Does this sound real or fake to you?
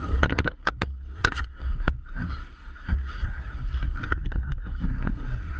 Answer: fake